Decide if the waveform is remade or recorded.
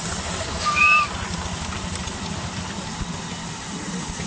recorded